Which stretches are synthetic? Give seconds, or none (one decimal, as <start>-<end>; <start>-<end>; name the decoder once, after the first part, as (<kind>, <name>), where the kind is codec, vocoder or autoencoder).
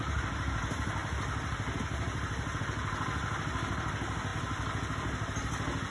none